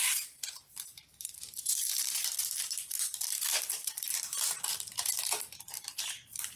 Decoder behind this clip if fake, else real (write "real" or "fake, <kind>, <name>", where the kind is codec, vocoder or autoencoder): fake, vocoder, BigVGAN v2